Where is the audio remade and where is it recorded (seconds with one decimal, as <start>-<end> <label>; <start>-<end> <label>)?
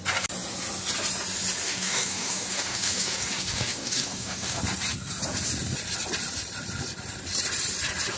0.0-1.6 recorded; 1.6-4.6 remade; 4.6-8.2 recorded